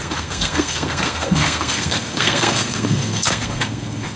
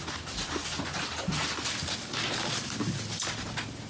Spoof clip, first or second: first